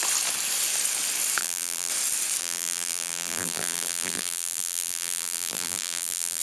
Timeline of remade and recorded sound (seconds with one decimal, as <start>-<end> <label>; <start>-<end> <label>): 0.0-1.4 recorded; 1.4-1.9 remade; 1.9-2.4 recorded; 2.4-6.4 remade